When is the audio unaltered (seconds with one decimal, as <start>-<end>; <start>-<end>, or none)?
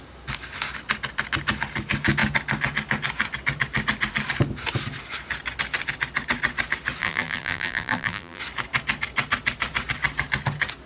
0.0-7.0; 8.4-10.9